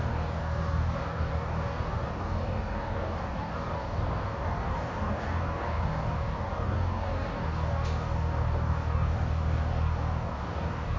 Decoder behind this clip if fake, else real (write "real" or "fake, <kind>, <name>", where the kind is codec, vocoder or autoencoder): fake, codec, DAC